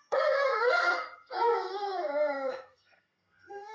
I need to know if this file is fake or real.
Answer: fake